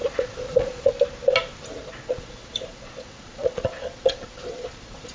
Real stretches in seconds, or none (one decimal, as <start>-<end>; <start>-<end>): 0.9-1.8